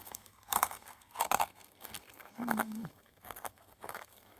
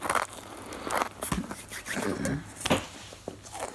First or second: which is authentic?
second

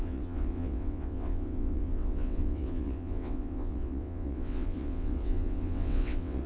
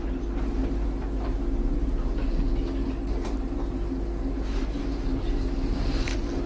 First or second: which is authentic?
second